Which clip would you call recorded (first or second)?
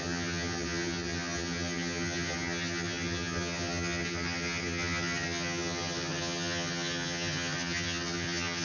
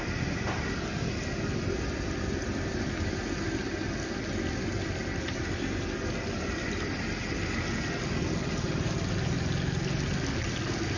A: second